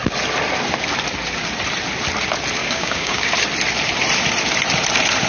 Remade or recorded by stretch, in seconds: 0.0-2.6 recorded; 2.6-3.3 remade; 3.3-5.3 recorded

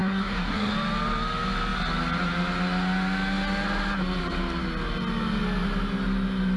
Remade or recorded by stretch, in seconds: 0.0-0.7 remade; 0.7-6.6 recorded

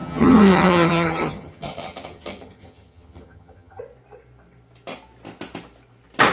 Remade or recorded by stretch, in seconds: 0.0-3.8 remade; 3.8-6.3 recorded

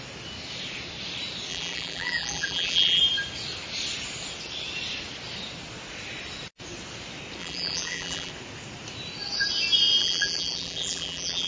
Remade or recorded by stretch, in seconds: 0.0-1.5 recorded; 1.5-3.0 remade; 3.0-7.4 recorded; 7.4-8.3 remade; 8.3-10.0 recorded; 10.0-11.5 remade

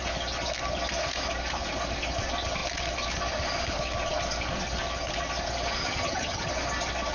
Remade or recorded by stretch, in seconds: 0.0-5.8 recorded; 5.8-6.5 remade; 6.5-7.1 recorded